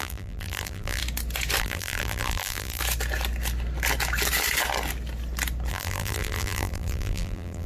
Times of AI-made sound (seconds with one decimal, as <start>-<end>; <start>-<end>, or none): 0.0-1.0; 1.6-2.8; 5.7-7.7